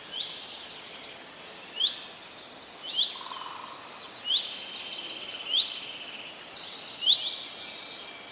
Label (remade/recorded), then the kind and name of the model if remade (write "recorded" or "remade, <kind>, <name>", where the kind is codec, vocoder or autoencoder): recorded